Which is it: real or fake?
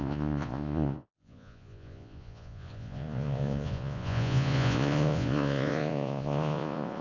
fake